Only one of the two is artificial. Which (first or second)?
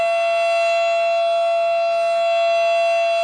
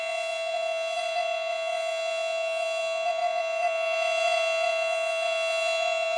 second